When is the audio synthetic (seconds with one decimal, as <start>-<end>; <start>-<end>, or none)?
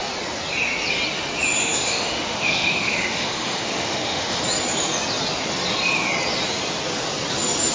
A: 1.6-4.4